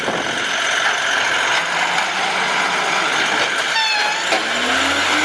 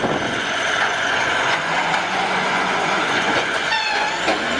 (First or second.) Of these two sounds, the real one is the first